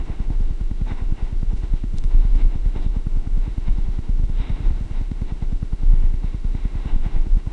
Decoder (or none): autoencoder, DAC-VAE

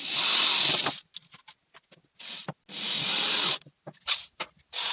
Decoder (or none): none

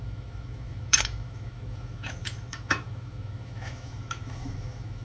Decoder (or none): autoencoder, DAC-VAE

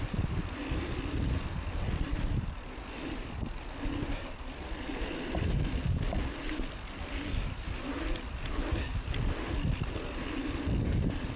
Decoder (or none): none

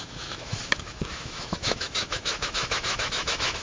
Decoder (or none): autoencoder, DAC-VAE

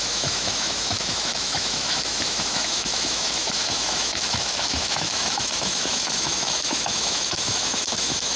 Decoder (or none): autoencoder, DAC-VAE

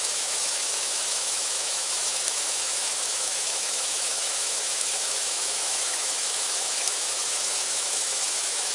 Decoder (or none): autoencoder, DAC-VAE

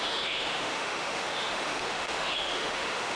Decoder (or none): autoencoder, DAC-VAE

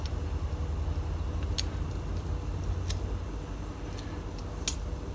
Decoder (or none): none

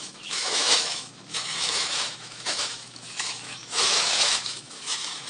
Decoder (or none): autoencoder, DAC-VAE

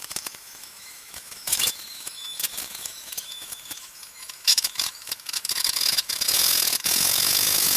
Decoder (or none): autoencoder, DAC-VAE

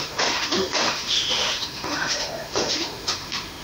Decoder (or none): autoencoder, DAC-VAE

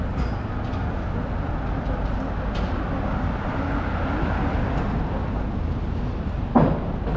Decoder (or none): none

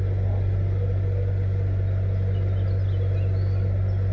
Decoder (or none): none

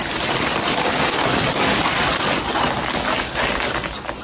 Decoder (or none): none